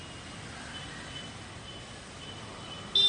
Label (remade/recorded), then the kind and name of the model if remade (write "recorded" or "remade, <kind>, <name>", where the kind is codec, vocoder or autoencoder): recorded